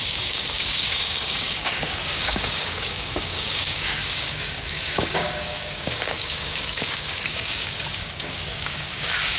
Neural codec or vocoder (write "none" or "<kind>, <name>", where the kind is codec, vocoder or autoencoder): codec, DAC